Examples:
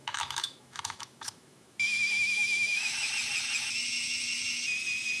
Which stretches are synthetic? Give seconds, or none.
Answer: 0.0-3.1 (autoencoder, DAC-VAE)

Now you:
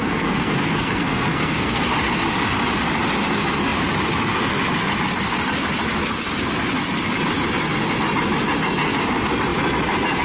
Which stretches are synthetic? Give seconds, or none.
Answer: 0.0-1.8 (codec, SNAC)

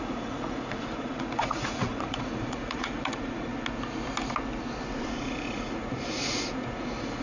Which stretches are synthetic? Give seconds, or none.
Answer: 0.0-3.5 (vocoder, Vocos); 5.1-7.2

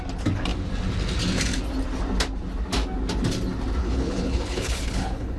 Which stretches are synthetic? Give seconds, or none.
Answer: 3.8-5.4 (codec, HILCodec)

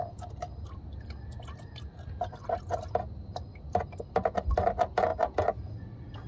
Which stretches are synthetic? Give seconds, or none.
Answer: none

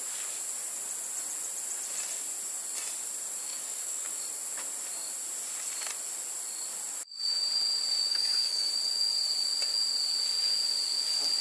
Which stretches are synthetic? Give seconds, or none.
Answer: 3.5-4.2 (codec, DAC); 8.1-8.7